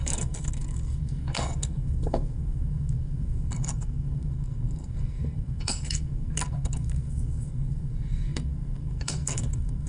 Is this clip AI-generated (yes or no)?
yes